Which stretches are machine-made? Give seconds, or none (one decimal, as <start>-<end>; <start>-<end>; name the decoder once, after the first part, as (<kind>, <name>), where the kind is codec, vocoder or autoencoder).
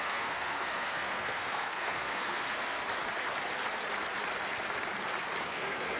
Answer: 0.0-2.8 (codec, SNAC); 5.4-6.0